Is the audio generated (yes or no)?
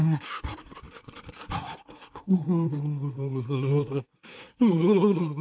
yes